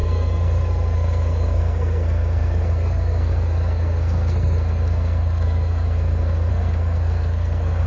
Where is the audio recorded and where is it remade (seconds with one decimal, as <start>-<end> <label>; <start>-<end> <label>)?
0.0-7.9 remade